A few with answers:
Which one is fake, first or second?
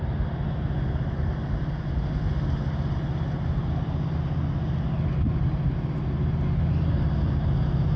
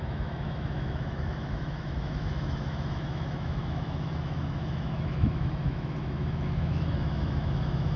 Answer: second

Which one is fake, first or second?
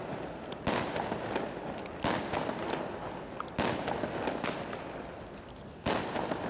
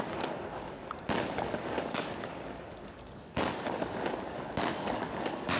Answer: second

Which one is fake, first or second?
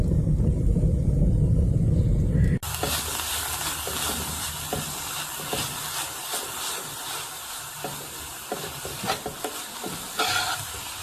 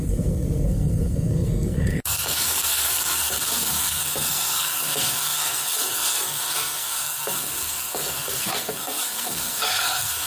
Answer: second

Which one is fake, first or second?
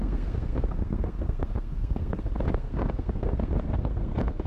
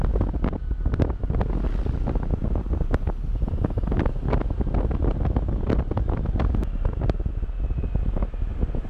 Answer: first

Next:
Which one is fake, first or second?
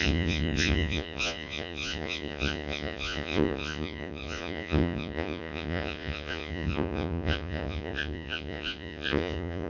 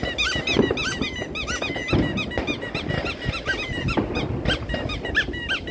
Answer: first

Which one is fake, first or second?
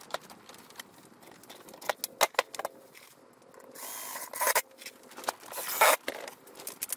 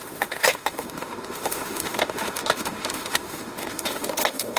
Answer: second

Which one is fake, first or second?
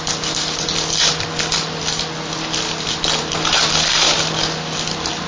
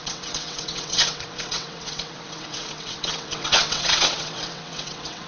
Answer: second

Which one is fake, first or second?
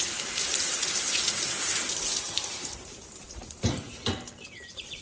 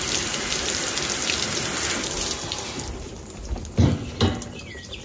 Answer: first